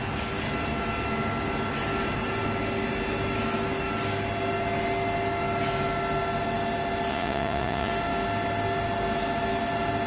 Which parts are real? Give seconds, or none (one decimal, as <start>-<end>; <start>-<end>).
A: 0.0-7.1; 7.9-10.1